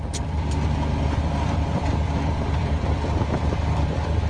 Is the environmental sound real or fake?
fake